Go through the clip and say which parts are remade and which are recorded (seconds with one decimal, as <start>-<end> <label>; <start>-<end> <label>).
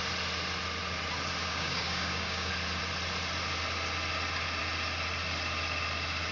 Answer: 0.0-1.4 recorded; 1.4-2.5 remade; 2.5-6.3 recorded